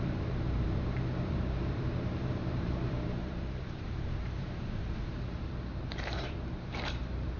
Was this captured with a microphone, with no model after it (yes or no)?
no